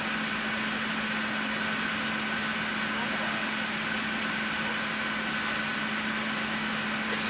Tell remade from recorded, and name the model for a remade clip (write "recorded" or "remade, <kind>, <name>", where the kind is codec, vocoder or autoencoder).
recorded